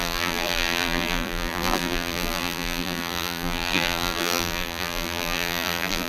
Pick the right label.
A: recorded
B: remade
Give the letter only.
B